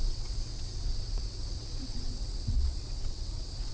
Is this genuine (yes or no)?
no